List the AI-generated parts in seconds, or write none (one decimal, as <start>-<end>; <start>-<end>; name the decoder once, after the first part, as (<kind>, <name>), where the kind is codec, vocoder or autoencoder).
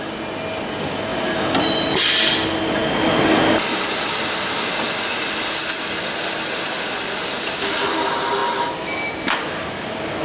none